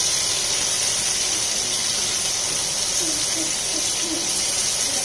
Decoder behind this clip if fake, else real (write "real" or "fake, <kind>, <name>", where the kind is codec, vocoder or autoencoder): real